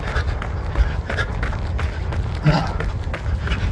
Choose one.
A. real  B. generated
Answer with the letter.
A